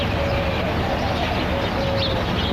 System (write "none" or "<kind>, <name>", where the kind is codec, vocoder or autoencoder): none